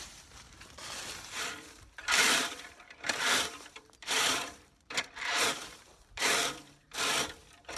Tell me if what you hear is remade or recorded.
remade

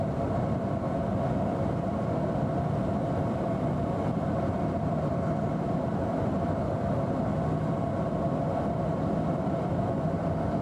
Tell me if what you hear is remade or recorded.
remade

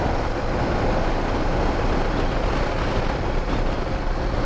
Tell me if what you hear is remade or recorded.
recorded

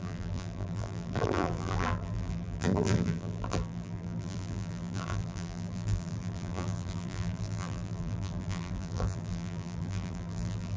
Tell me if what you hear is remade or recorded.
remade